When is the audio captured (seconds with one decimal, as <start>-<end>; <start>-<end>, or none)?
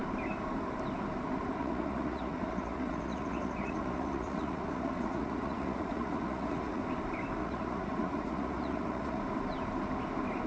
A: 0.0-1.6; 6.8-7.4; 9.2-10.5